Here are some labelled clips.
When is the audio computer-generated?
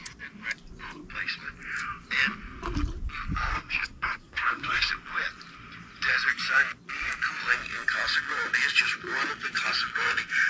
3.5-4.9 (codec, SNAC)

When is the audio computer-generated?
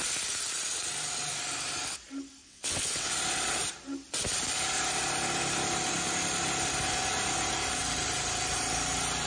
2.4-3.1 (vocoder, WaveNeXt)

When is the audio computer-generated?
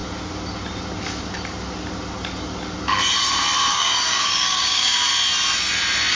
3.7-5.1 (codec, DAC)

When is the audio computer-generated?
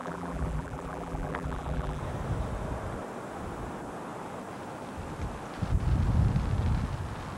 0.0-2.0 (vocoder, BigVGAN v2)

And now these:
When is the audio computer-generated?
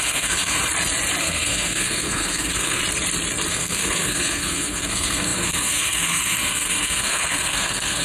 0.0-0.6 (codec, SNAC); 1.2-2.8; 3.5-8.0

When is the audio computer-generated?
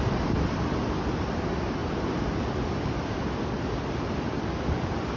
none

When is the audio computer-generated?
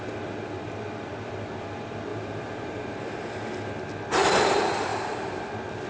2.1-3.3 (vocoder, BigVGAN v2); 4.9-5.4